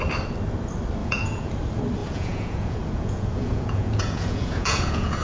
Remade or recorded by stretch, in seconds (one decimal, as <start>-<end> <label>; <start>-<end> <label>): 0.0-1.0 recorded; 1.0-1.5 remade; 1.5-2.0 recorded; 2.0-5.2 remade